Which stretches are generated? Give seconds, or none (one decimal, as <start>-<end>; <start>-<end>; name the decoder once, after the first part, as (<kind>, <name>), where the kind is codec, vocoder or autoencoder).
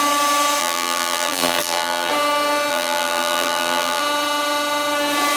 0.6-2.1 (vocoder, BigVGAN v2); 2.7-4.0